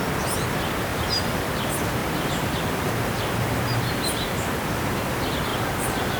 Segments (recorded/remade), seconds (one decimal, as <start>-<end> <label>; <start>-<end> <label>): 0.0-0.9 recorded; 0.9-1.4 remade; 1.4-2.0 recorded; 2.0-3.9 remade; 3.9-5.5 recorded; 5.5-6.2 remade